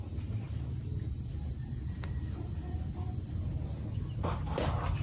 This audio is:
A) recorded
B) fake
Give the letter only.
A